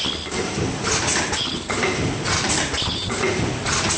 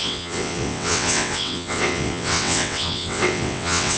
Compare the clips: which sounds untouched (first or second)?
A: first